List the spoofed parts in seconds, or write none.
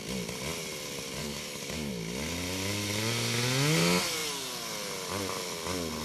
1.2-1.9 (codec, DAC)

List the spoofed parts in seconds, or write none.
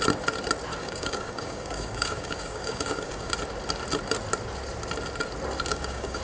0.8-3.3 (codec, DAC); 5.7-6.2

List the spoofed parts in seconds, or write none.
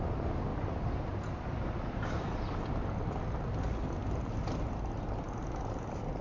none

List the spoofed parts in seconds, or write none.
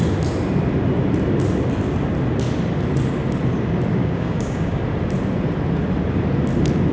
4.0-4.8 (codec, DAC)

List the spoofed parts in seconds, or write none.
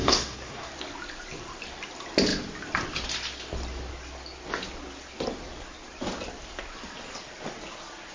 0.0-0.7 (codec, DAC)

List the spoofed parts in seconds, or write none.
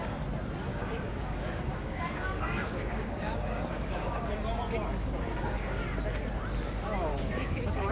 0.7-4.3 (codec, DAC); 5.0-5.8; 7.1-7.9